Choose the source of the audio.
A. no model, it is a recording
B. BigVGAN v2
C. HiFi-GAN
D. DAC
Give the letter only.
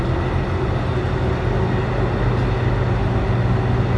A